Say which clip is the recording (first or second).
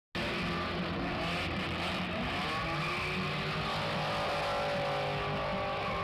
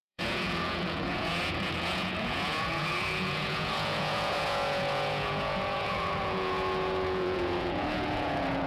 first